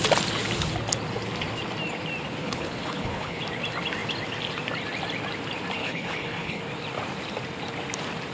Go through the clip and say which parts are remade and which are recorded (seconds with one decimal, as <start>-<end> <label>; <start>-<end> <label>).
0.0-2.4 recorded; 2.4-3.4 remade; 3.4-5.8 recorded; 5.8-6.6 remade; 6.6-8.3 recorded